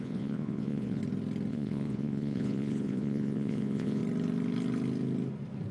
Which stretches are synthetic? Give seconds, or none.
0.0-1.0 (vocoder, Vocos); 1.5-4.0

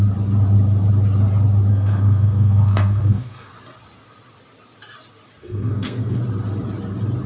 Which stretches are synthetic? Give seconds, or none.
1.7-3.5 (codec, SNAC); 5.4-6.2

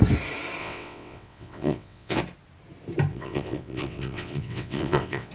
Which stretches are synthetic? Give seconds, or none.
0.6-2.2 (vocoder, WaveNeXt); 3.1-5.3

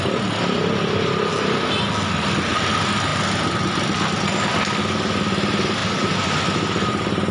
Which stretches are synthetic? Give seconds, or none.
none

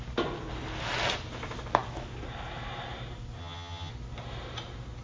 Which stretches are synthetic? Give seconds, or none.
3.4-3.9 (vocoder, HiFi-GAN)